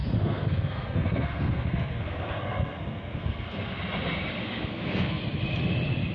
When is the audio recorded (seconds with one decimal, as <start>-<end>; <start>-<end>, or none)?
3.7-4.4; 5.2-6.1